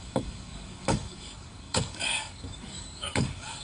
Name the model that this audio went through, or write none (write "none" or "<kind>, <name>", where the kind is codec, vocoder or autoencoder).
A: codec, DAC